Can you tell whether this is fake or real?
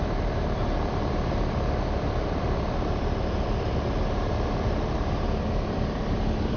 fake